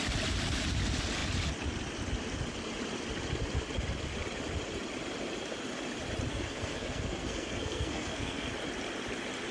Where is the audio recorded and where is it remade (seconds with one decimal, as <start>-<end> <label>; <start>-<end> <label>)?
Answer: 0.0-6.3 recorded; 6.3-8.5 remade; 8.5-9.5 recorded